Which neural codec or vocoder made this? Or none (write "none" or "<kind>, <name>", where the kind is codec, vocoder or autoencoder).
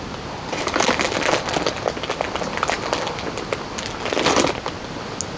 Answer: none